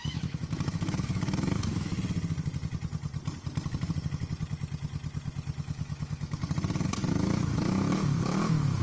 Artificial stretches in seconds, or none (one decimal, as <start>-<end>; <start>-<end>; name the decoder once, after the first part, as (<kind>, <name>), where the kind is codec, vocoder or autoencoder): 0.0-1.9 (autoencoder, DAC-VAE); 5.6-6.4; 7.1-8.8